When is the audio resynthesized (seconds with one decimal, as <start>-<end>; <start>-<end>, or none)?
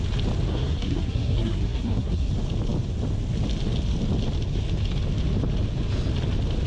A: 0.5-2.3